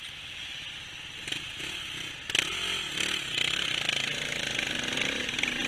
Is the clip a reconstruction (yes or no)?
no